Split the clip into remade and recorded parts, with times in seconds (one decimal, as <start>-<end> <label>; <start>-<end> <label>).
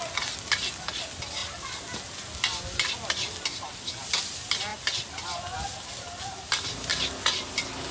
0.0-7.9 recorded